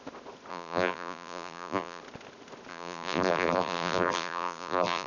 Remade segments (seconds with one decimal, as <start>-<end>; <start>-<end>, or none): 0.5-2.0; 2.7-5.1